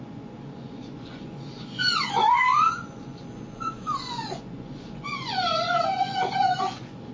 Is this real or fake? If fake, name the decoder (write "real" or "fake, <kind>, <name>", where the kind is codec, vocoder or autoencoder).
fake, vocoder, Vocos